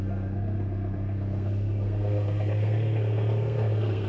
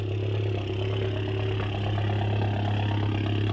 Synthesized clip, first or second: first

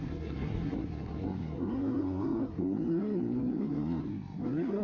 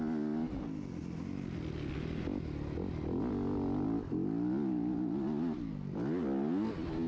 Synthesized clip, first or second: first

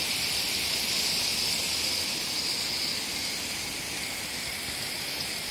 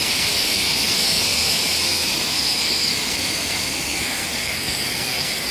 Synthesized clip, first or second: second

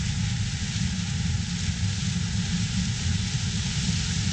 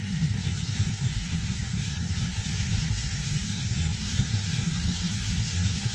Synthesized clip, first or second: second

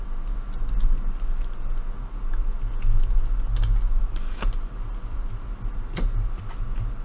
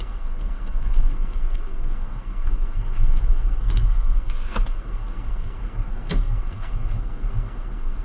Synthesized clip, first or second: second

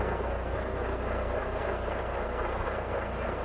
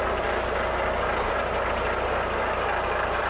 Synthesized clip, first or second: first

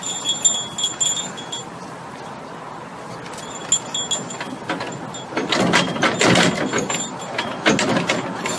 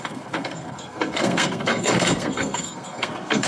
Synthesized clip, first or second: second